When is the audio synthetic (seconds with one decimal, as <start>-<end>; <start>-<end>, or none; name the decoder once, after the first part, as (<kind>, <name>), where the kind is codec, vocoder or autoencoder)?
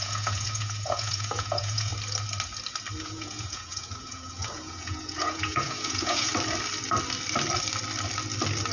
0.0-1.9 (vocoder, Vocos); 3.0-6.3